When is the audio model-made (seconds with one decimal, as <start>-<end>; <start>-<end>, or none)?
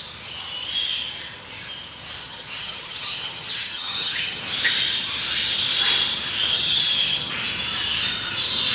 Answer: 2.2-4.4; 6.5-7.3